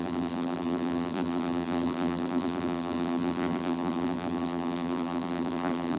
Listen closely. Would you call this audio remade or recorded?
remade